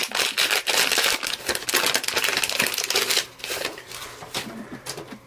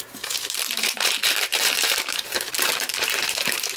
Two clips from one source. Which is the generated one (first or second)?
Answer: second